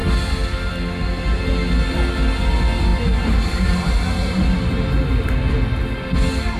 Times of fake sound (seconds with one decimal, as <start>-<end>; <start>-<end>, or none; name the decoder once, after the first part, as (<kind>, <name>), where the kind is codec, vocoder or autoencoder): none